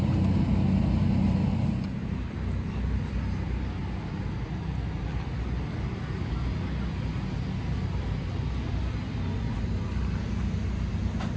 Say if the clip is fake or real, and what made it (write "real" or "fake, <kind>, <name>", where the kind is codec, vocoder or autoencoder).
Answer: real